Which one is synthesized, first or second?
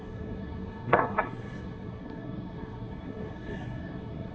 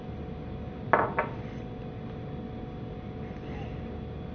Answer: first